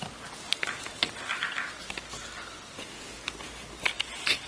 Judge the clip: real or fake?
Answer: real